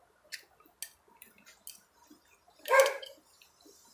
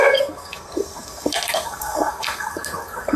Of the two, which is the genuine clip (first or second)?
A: first